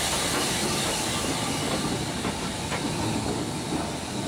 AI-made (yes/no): no